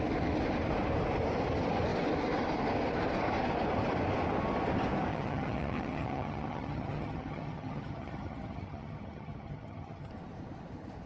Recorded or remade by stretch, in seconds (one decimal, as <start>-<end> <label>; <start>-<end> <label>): 0.0-5.1 recorded; 5.1-10.1 remade; 10.1-11.1 recorded